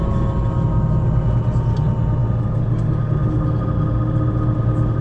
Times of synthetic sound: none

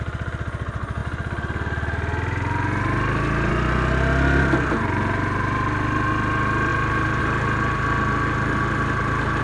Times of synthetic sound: none

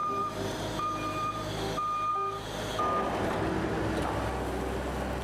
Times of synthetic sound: 0.0-1.5 (vocoder, BigVGAN v2)

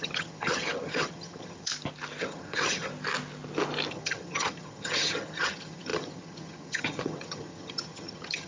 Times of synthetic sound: 0.0-1.7 (vocoder, HiFi-GAN); 2.2-2.9; 3.9-8.5

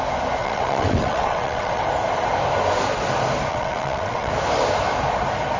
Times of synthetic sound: 0.4-1.8 (vocoder, WaveNeXt); 3.5-4.3

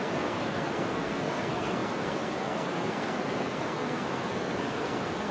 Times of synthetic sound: 0.0-5.3 (codec, SNAC)

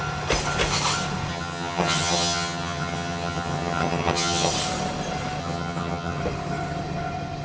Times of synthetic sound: 1.3-4.5 (vocoder, HiFi-GAN); 5.4-6.2